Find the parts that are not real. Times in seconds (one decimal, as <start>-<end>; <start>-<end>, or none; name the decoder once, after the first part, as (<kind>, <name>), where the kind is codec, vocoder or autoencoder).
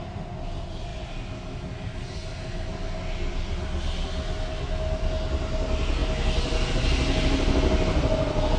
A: none